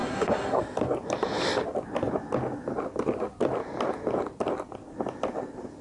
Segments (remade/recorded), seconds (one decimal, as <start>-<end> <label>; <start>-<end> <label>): 0.0-0.6 remade; 0.6-5.8 recorded